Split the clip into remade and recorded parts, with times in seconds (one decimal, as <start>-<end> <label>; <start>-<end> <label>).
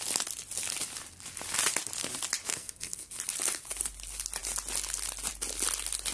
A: 0.0-2.4 recorded; 2.4-3.1 remade; 3.1-6.1 recorded